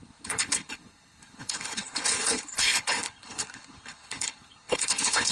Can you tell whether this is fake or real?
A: fake